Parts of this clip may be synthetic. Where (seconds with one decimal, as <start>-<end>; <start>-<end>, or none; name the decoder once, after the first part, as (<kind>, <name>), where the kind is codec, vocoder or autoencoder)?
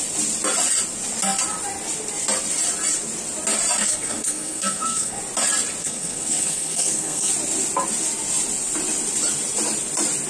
3.8-5.2 (codec, SNAC); 5.8-7.3